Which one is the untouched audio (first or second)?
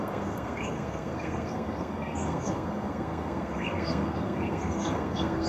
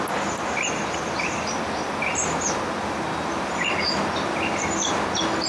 second